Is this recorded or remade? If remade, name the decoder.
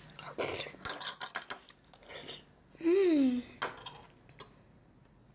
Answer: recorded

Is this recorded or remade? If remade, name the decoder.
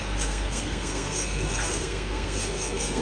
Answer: remade, codec, SNAC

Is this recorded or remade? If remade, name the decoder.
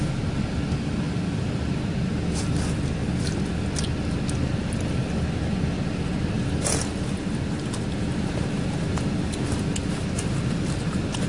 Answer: recorded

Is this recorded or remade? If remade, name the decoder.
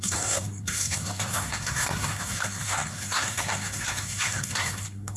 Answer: remade, codec, SNAC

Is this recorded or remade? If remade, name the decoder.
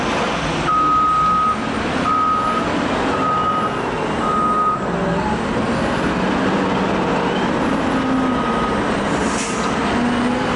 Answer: recorded